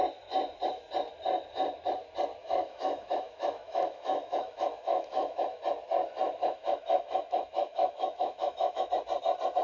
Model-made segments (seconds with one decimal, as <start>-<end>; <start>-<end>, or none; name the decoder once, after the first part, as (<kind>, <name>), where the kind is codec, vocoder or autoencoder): 2.4-5.6 (autoencoder, DAC-VAE); 6.4-8.9

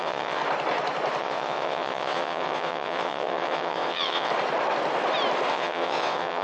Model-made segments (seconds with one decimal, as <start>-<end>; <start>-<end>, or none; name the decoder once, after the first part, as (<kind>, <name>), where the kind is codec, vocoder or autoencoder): 0.0-0.4 (vocoder, WaveNeXt); 1.2-4.3; 5.5-6.4

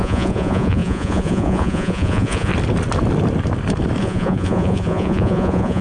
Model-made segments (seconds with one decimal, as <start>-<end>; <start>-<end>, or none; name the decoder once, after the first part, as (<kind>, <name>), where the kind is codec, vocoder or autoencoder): 0.0-2.5 (vocoder, Vocos); 4.0-5.8

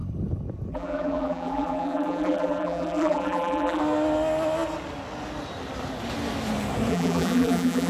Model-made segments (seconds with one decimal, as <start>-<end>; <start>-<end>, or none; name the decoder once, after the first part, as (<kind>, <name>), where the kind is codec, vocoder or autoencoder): 0.7-3.8 (vocoder, BigVGAN v2); 6.9-7.9

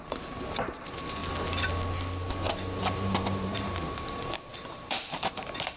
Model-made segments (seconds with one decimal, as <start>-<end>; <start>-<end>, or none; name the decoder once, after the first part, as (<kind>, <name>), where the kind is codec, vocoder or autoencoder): 0.0-1.2 (vocoder, BigVGAN v2); 2.8-5.8

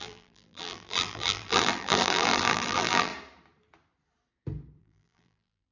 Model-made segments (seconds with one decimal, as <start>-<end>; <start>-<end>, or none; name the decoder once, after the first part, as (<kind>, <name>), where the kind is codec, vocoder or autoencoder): 0.0-3.1 (vocoder, BigVGAN v2); 4.8-5.7

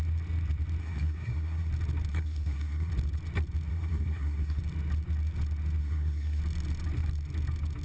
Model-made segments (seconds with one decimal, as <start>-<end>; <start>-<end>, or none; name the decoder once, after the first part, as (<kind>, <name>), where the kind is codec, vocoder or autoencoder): 0.8-1.7 (codec, SNAC); 2.1-2.9; 3.7-4.6; 5.8-6.4

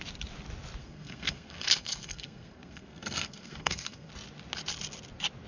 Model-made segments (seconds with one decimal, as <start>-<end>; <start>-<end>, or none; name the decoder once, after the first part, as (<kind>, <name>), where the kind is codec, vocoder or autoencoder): 0.8-4.1 (codec, SNAC)